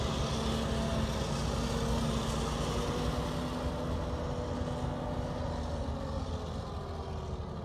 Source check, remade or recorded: recorded